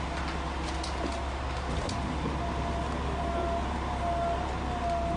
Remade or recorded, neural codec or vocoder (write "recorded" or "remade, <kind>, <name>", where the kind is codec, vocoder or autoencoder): recorded